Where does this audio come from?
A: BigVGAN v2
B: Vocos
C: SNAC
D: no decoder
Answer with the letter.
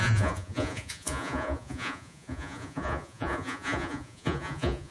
B